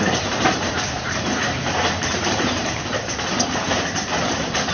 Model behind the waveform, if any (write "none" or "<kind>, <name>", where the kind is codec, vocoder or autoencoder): vocoder, BigVGAN v2